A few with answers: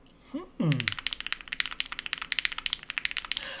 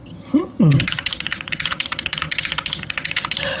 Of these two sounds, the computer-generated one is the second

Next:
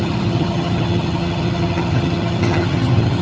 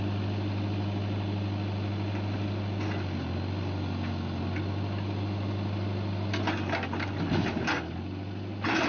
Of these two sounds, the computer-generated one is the first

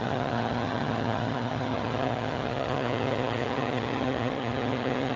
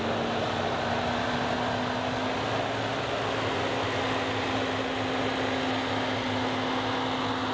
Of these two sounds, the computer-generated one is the first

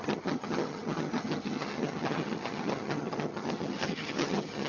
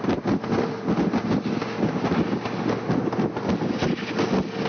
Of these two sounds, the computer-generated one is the first